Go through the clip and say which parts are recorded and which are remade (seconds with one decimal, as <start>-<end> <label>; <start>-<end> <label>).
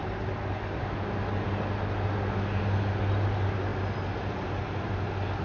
0.0-5.4 recorded